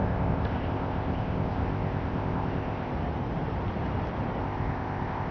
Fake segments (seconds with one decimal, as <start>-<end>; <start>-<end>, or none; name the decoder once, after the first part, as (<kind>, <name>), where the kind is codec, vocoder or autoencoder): 0.0-2.9 (codec, ZipCodec); 4.4-5.3